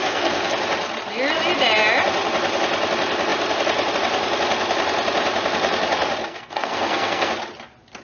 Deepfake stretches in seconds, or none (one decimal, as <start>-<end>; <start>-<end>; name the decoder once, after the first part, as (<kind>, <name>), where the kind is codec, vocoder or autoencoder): 0.0-0.5 (codec, SNAC); 6.2-7.3